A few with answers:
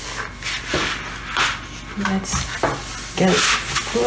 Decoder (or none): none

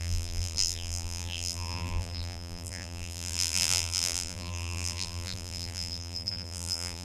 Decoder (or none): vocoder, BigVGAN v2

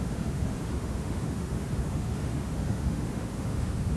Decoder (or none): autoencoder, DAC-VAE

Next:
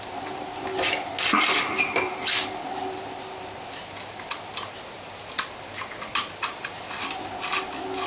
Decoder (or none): none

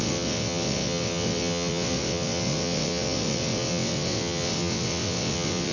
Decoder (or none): vocoder, WaveNeXt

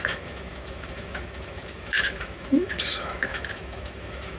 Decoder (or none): autoencoder, DAC-VAE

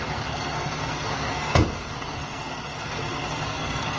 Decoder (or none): codec, SNAC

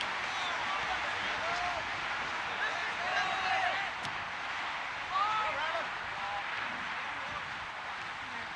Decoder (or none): none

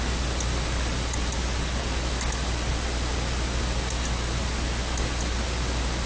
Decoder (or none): none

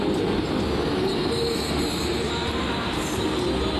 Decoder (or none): none